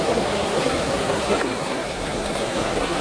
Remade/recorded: remade